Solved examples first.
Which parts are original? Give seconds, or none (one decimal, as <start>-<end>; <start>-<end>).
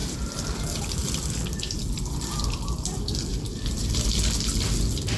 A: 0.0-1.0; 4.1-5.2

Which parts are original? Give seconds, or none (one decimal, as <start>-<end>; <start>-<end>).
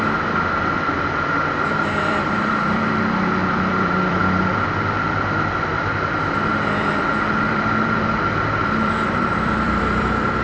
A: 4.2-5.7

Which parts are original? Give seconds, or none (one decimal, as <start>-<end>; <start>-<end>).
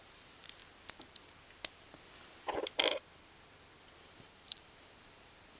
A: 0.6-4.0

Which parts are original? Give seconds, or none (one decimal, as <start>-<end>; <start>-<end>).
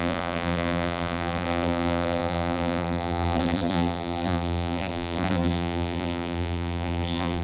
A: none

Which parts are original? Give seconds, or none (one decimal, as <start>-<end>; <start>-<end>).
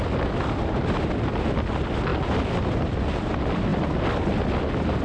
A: 0.0-5.0